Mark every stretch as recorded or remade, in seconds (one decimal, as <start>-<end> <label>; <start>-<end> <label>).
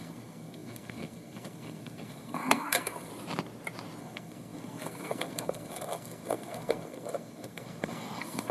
0.0-3.1 remade; 3.1-4.0 recorded; 4.0-8.5 remade